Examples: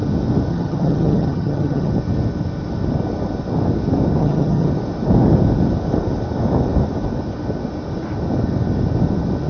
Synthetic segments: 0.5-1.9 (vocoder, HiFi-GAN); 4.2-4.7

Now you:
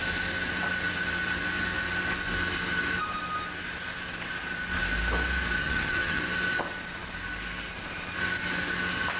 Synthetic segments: 5.6-6.2 (vocoder, HiFi-GAN)